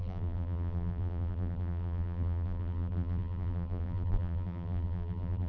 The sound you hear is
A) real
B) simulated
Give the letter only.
B